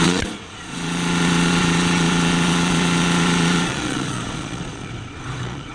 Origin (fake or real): fake